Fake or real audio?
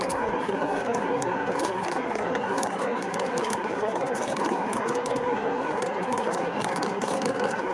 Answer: fake